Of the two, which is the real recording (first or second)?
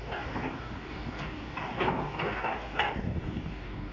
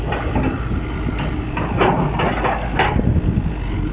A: second